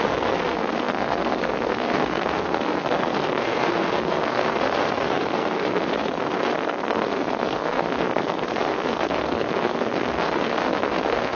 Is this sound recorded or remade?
remade